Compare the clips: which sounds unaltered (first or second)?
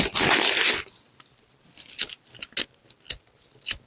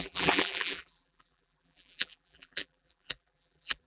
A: first